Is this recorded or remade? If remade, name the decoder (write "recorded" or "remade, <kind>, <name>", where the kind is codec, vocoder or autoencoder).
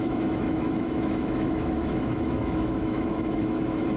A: remade, autoencoder, DAC-VAE